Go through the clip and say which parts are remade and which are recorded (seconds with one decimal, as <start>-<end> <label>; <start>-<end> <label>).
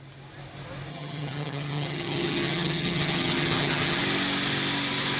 0.0-0.9 recorded; 0.9-4.0 remade; 4.0-5.2 recorded